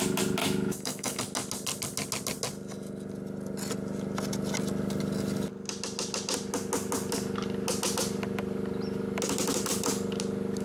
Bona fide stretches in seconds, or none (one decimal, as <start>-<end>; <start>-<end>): 0.0-0.4; 1.2-10.6